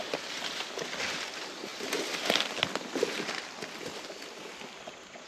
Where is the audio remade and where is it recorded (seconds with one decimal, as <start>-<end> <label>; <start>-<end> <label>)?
0.0-5.3 recorded